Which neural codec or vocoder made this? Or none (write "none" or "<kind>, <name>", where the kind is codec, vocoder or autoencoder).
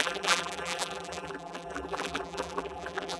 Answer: vocoder, BigVGAN v2